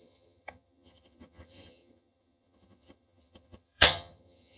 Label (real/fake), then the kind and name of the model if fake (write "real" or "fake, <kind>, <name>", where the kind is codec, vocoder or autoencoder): fake, vocoder, HiFi-GAN